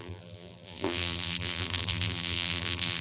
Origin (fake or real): fake